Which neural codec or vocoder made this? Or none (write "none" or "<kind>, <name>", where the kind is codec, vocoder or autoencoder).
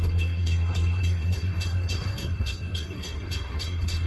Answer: codec, SNAC